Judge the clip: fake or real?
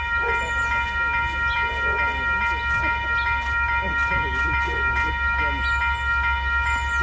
real